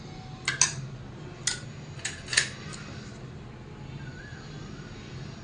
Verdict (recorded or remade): recorded